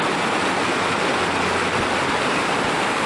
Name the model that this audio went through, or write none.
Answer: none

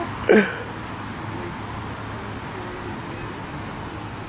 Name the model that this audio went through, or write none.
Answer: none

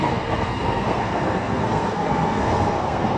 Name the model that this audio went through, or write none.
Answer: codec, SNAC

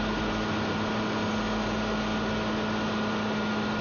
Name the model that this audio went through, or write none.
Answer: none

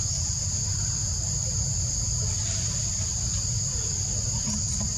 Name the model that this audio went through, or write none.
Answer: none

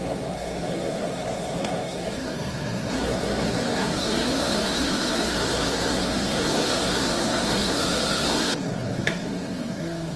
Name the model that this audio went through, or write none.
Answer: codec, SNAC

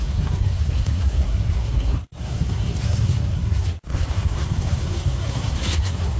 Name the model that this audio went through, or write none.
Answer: codec, SNAC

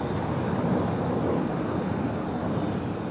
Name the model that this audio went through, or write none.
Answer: none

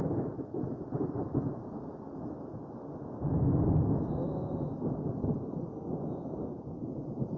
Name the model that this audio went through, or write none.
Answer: none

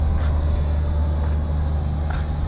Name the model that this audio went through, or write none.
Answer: none